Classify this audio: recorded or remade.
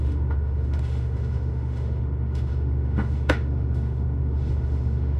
remade